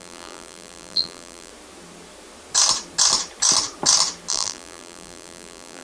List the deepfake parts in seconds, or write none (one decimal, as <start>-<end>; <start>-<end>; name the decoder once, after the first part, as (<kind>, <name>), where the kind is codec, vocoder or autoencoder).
0.0-1.5 (vocoder, BigVGAN v2); 4.3-5.8